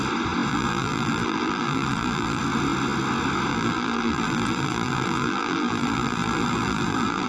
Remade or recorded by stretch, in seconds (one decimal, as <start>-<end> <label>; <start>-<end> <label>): 0.0-0.5 recorded; 0.5-2.4 remade; 2.4-3.5 recorded; 3.5-7.3 remade